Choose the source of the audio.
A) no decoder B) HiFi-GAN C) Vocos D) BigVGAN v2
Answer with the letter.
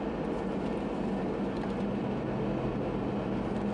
A